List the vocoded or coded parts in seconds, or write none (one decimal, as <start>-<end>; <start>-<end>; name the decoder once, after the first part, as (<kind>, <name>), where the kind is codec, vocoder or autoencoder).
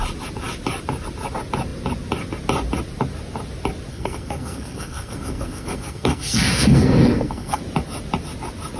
3.9-7.6 (codec, SNAC)